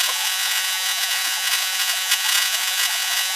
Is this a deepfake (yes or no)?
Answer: yes